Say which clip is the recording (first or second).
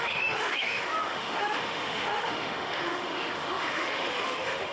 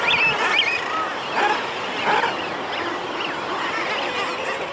second